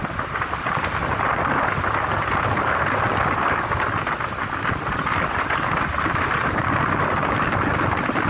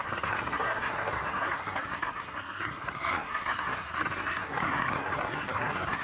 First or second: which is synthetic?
second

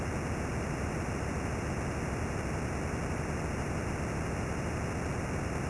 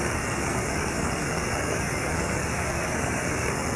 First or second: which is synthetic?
second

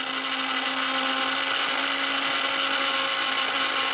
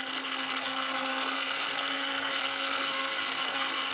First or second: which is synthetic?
second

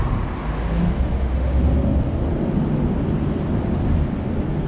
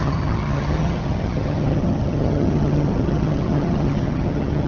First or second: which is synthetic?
second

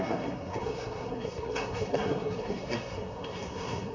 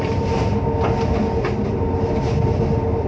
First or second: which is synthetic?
first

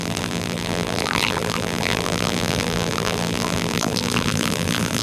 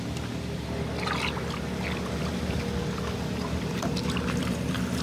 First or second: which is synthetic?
first